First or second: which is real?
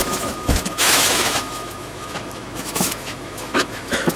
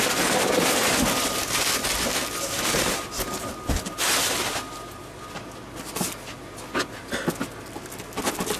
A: second